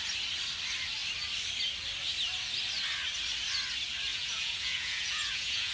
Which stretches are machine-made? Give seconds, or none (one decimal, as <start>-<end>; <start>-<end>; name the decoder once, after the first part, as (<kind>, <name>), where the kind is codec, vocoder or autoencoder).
4.1-5.7 (vocoder, Vocos)